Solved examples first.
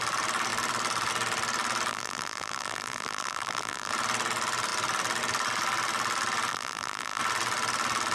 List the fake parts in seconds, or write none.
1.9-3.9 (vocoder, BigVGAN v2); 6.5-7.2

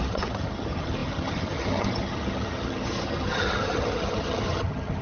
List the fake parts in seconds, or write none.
0.0-5.0 (vocoder, HiFi-GAN)